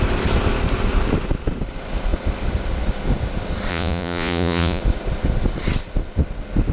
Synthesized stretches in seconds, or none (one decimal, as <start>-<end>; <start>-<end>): 3.7-4.8